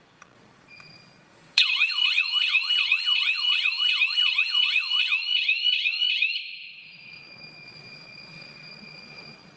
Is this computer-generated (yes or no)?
yes